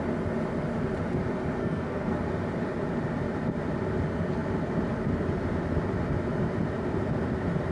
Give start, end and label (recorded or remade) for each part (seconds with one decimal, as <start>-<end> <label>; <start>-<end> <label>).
0.0-1.6 recorded; 1.6-2.2 remade; 2.2-7.7 recorded